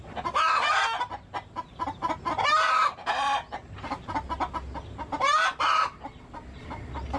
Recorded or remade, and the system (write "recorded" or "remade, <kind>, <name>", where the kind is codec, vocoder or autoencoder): recorded